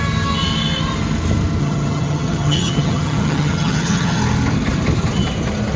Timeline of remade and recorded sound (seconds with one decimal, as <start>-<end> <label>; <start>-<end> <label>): 0.0-1.6 recorded; 1.6-4.2 remade; 4.2-5.8 recorded